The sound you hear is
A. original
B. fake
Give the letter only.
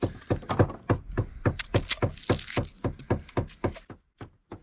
A